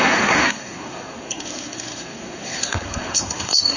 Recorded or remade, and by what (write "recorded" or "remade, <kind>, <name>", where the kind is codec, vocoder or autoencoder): remade, codec, SNAC